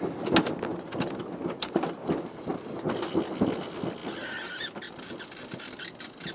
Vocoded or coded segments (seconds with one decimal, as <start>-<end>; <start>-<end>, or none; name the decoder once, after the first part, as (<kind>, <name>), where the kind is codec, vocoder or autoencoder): none